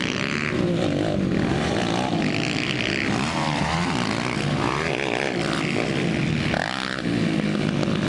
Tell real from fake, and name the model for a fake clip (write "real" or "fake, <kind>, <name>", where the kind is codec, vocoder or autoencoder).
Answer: real